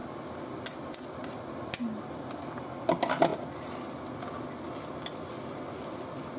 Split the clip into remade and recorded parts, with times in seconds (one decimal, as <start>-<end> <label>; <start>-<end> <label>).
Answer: 0.0-6.4 recorded